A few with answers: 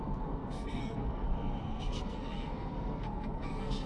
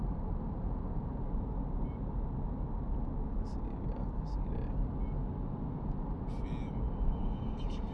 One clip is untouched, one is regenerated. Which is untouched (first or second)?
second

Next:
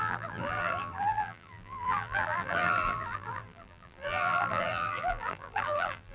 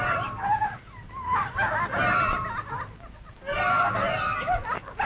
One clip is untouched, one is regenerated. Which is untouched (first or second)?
second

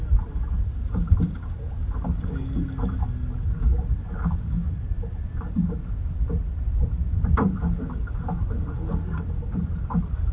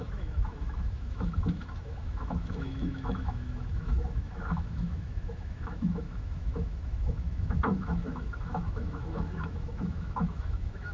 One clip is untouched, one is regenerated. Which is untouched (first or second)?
first